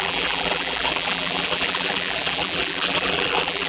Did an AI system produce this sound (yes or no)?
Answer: yes